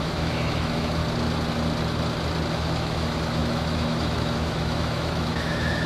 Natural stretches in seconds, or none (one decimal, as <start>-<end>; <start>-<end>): 1.0-2.5